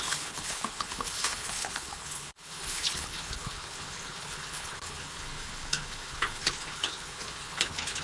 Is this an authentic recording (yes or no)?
no